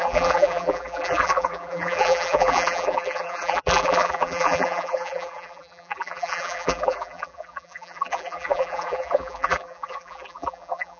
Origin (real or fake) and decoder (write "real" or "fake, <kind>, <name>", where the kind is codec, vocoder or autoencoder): fake, vocoder, BigVGAN v2